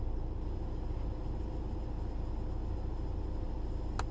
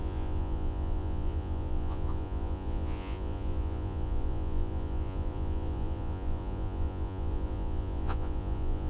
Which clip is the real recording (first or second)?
first